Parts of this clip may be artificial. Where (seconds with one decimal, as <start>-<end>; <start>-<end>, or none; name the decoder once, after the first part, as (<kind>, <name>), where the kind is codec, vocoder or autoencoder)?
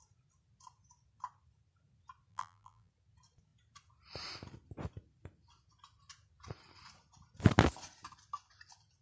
2.3-2.9 (vocoder, BigVGAN v2)